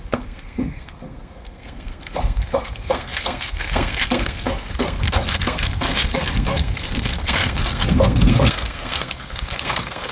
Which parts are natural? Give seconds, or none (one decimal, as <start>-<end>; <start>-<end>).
none